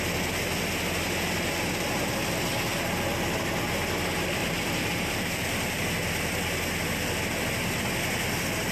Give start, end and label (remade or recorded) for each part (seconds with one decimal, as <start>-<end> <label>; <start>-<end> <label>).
0.0-4.4 recorded; 4.4-5.8 remade; 5.8-8.7 recorded